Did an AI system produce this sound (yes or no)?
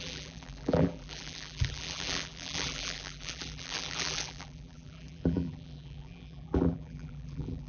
yes